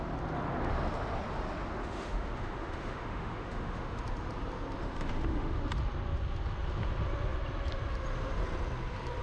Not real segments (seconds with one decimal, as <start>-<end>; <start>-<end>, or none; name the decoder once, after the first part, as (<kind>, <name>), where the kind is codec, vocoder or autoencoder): 1.8-4.0 (autoencoder, DAC-VAE); 4.8-5.6